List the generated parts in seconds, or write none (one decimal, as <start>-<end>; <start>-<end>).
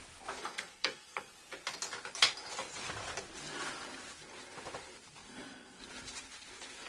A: 0.4-1.3; 5.2-5.8